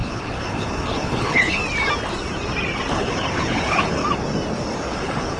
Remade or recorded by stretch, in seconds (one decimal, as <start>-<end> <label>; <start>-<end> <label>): 0.0-1.6 remade; 1.6-2.9 recorded; 2.9-4.0 remade; 4.0-4.9 recorded; 4.9-5.4 remade